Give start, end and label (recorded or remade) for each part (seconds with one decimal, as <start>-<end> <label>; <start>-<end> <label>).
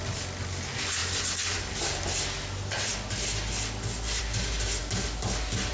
0.0-5.7 recorded